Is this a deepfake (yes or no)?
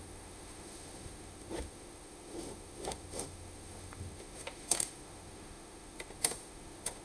yes